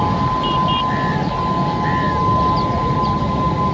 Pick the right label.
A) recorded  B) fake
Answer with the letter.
A